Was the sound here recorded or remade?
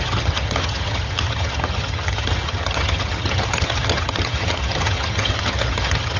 remade